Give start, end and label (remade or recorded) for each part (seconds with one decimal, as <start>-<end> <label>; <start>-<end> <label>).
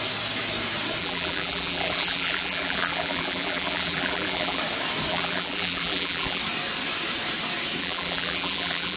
0.0-1.0 recorded; 1.0-4.6 remade; 4.6-5.1 recorded; 5.1-6.4 remade; 6.4-7.8 recorded; 7.8-9.0 remade